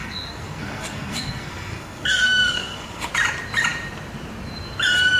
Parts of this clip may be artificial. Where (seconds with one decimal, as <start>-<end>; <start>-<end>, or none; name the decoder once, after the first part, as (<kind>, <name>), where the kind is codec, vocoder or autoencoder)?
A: 0.0-3.1 (codec, SNAC)